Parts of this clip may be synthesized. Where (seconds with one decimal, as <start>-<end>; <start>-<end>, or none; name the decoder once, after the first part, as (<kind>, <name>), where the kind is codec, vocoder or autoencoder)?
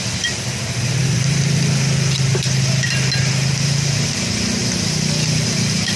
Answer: none